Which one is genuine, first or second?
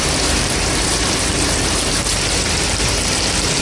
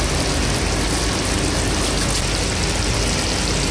second